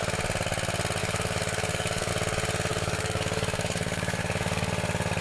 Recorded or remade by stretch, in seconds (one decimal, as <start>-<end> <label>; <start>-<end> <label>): 0.0-1.0 recorded; 1.0-2.1 remade; 2.1-2.7 recorded; 2.7-4.7 remade; 4.7-5.2 recorded